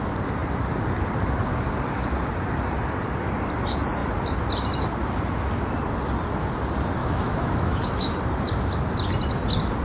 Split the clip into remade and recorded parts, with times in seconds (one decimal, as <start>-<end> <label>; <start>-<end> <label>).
0.0-7.0 recorded; 7.0-8.2 remade; 8.2-9.8 recorded